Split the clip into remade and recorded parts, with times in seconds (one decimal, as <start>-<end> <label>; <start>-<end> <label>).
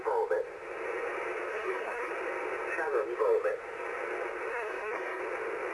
0.0-1.5 recorded; 1.5-2.1 remade; 2.1-4.5 recorded; 4.5-5.2 remade; 5.2-5.7 recorded